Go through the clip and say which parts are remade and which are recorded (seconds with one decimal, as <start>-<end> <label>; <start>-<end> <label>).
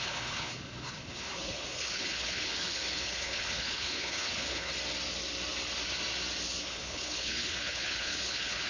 0.0-4.7 remade; 4.7-6.6 recorded; 6.6-8.7 remade